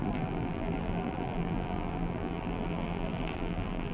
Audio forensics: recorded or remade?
remade